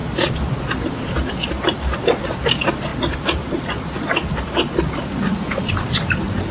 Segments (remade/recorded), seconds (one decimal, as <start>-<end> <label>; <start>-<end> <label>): 0.0-6.5 recorded